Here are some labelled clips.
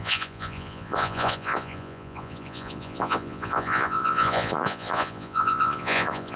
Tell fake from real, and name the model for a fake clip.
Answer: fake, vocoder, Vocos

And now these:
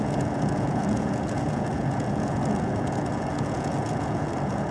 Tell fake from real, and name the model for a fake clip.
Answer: fake, vocoder, Vocos